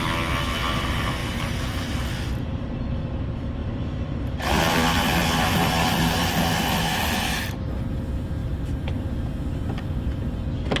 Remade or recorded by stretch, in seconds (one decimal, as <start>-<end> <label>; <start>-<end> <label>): 0.0-3.6 recorded; 3.6-6.4 remade; 6.4-8.4 recorded; 8.4-9.0 remade; 9.0-10.8 recorded